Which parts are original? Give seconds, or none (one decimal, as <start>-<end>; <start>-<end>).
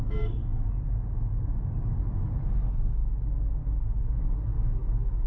0.4-2.6; 3.0-4.1